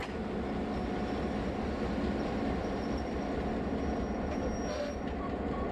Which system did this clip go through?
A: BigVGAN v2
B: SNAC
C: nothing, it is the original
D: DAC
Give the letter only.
C